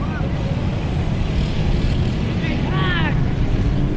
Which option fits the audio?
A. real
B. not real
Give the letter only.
A